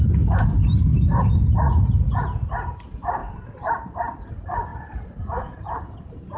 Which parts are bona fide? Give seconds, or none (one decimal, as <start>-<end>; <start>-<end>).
0.0-3.2; 3.9-4.7; 6.0-6.4